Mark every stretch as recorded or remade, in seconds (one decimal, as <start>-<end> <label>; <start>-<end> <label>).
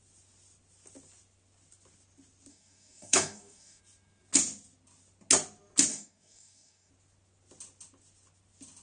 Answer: 0.0-2.5 recorded; 2.5-3.8 remade; 3.8-5.9 recorded; 5.9-6.9 remade; 6.9-8.8 recorded